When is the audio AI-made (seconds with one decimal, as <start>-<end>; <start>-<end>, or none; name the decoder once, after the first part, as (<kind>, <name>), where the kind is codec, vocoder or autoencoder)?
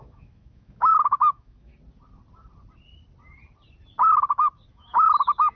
0.0-1.7 (autoencoder, DAC-VAE); 4.7-5.6